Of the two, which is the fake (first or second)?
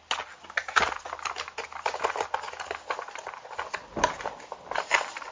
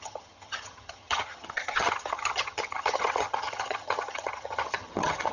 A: second